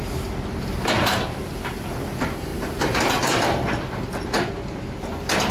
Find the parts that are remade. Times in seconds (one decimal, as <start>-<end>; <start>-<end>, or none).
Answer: 2.5-4.5